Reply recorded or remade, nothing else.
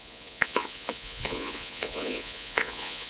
remade